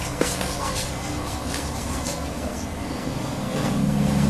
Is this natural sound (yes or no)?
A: no